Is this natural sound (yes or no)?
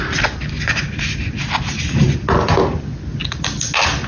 yes